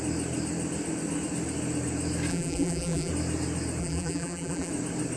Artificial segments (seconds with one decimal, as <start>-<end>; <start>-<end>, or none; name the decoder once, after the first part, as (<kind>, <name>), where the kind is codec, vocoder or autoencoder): 2.3-3.1 (vocoder, BigVGAN v2); 3.8-4.7